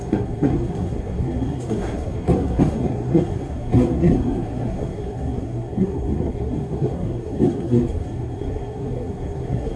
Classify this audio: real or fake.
fake